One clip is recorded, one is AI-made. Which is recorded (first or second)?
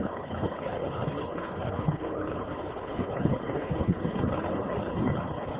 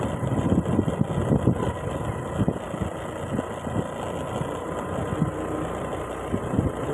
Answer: second